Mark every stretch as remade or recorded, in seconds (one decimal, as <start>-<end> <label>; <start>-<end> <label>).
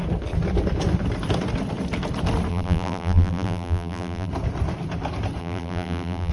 0.0-2.5 recorded; 2.5-4.3 remade; 4.3-5.4 recorded; 5.4-6.3 remade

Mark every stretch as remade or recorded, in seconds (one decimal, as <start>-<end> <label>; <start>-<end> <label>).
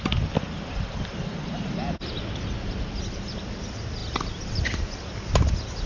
0.0-5.9 recorded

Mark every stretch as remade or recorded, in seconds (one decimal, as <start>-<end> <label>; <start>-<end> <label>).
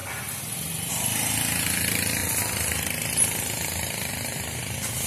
0.0-5.1 remade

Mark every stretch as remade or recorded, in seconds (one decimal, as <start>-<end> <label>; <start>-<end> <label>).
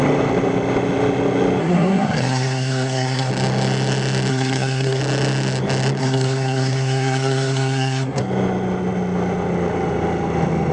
0.0-1.6 recorded; 1.6-3.3 remade; 3.3-4.3 recorded; 4.3-5.0 remade; 5.0-6.0 recorded; 6.0-8.2 remade; 8.2-10.7 recorded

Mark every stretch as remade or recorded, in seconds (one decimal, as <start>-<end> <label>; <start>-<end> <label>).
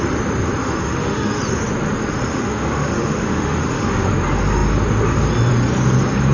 0.0-0.6 recorded; 0.6-1.4 remade; 1.4-2.3 recorded; 2.3-4.1 remade; 4.1-6.3 recorded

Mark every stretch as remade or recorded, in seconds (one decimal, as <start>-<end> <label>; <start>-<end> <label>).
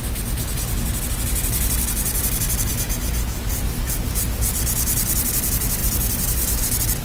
0.0-7.0 recorded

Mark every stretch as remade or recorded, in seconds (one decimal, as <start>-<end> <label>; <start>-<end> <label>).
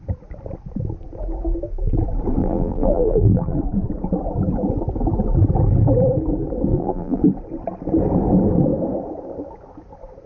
0.0-2.4 recorded; 2.4-3.6 remade; 3.6-6.7 recorded; 6.7-7.2 remade; 7.2-10.3 recorded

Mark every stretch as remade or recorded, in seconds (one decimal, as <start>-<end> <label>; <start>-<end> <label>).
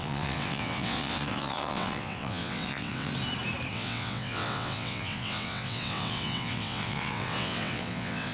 0.0-3.1 remade; 3.1-3.7 recorded; 3.7-8.3 remade